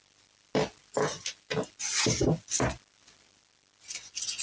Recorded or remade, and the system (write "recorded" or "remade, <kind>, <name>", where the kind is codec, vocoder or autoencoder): recorded